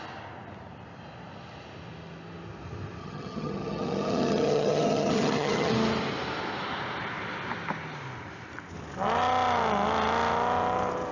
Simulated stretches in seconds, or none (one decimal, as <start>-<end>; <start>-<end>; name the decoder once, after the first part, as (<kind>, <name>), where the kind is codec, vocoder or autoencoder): 3.0-5.7 (vocoder, HiFi-GAN)